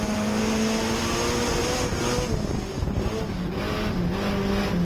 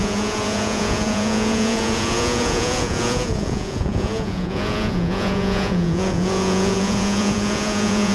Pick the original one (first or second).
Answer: first